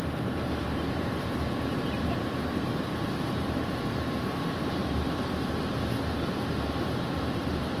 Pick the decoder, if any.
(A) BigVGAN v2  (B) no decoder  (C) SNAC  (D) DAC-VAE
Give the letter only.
A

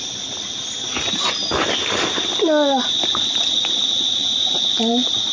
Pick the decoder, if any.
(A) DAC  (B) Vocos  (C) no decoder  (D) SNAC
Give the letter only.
C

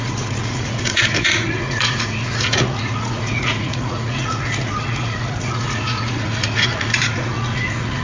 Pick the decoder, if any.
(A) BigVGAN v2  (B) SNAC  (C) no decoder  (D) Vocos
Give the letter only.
D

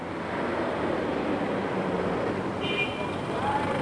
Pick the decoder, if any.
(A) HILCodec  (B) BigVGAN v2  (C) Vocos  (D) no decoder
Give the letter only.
D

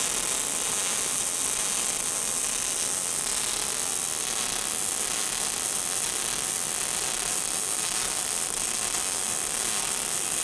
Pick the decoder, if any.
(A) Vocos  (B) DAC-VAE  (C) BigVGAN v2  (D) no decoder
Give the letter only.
D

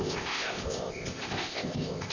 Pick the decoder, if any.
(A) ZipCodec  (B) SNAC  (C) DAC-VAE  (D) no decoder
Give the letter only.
A